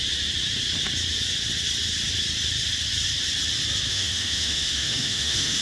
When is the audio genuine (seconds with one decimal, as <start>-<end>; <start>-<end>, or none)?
0.0-3.9